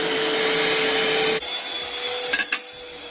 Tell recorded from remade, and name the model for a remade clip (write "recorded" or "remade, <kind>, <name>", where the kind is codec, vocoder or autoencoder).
recorded